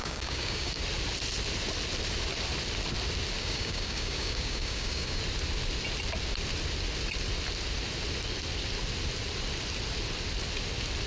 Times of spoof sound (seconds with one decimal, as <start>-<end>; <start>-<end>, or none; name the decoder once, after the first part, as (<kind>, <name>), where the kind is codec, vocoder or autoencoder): 0.0-0.8 (codec, DAC); 3.4-5.2